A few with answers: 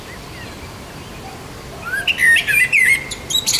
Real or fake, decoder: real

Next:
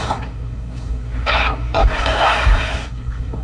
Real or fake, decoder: fake, codec, SNAC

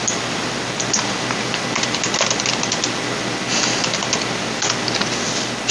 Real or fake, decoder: real